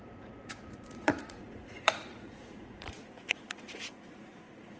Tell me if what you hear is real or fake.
fake